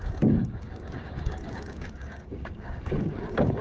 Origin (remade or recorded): remade